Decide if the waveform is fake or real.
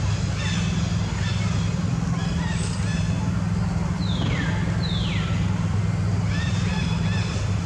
real